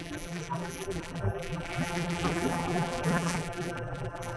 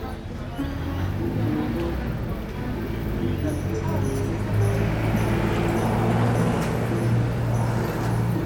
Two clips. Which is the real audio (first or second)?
second